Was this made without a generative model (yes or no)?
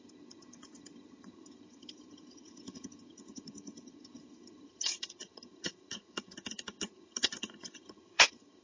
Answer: no